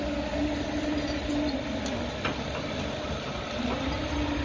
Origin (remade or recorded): recorded